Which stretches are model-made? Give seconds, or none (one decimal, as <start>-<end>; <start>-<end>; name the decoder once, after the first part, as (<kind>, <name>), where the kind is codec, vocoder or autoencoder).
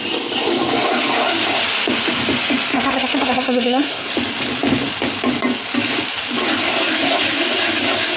2.7-4.1 (codec, SNAC)